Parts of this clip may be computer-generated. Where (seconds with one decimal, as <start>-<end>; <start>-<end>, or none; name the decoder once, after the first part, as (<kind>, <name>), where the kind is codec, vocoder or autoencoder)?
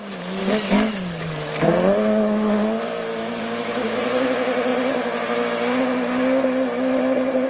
0.4-3.4 (codec, DAC)